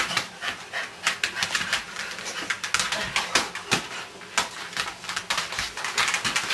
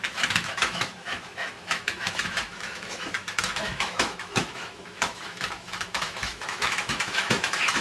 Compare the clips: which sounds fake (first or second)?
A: second